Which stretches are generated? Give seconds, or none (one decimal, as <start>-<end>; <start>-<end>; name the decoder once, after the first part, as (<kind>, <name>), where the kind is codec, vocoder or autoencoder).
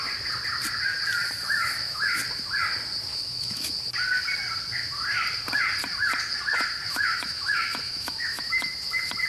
1.6-2.2 (autoencoder, DAC-VAE); 3.1-3.7; 6.9-8.7